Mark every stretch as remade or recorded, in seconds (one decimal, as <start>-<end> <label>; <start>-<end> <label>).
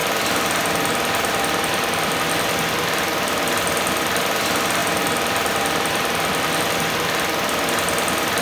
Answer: 0.0-4.8 recorded; 4.8-6.6 remade; 6.6-8.4 recorded